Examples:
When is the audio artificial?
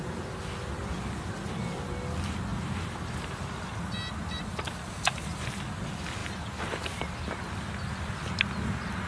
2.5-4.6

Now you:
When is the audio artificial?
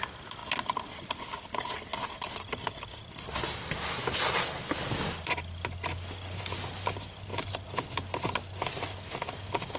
none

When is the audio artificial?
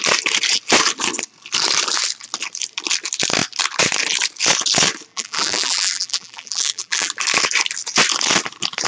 5.1-7.1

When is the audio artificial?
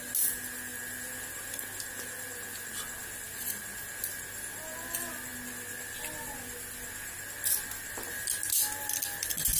none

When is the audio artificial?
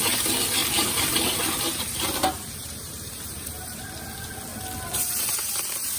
0.6-3.8; 4.5-6.0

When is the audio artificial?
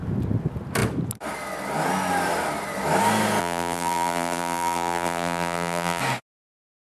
3.4-6.0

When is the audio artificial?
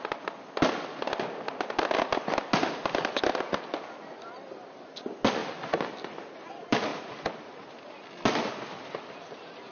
6.9-7.7; 8.8-9.7